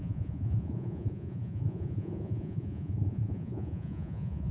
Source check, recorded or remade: remade